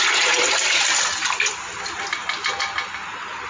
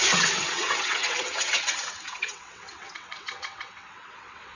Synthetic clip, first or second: second